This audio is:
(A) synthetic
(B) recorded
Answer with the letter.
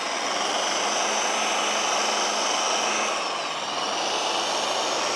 B